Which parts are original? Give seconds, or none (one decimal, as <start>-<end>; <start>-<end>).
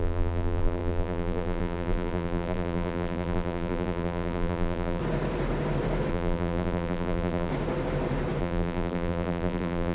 5.0-6.1; 7.5-8.4